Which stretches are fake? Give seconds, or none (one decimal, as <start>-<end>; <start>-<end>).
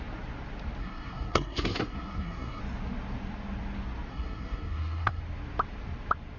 0.8-2.6; 4.1-5.2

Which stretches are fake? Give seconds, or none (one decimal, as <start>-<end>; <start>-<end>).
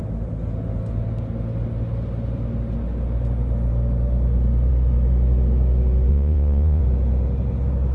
6.1-6.8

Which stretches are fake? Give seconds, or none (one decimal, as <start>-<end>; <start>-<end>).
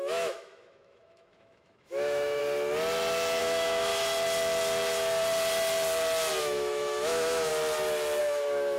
0.0-2.4; 3.4-3.9; 6.4-7.5; 8.2-8.8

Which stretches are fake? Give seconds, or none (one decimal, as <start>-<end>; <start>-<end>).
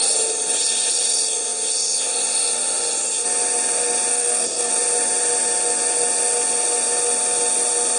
4.1-4.7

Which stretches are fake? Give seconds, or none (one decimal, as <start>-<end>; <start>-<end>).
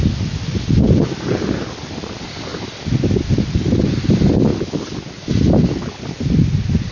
none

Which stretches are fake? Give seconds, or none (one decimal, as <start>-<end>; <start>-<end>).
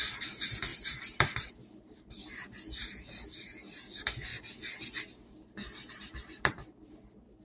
0.0-4.3; 5.9-7.4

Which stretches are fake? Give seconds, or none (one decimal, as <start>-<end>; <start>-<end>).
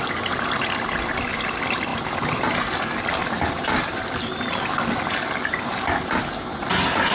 none